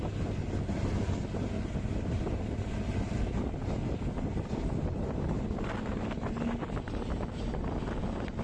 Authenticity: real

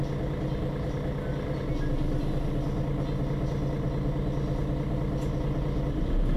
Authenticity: real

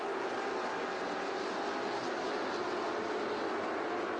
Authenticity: real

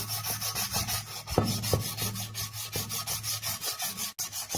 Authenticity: real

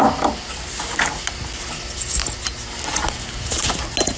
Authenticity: real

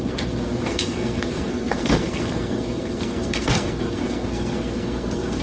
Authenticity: fake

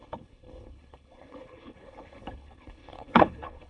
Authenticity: fake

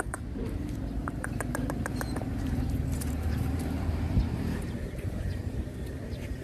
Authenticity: fake